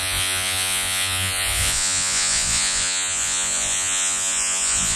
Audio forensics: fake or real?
fake